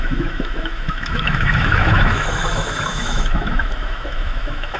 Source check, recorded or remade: remade